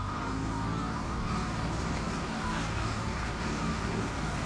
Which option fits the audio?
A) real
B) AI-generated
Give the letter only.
B